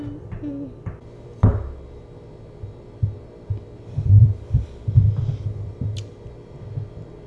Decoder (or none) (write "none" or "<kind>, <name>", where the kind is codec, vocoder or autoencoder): none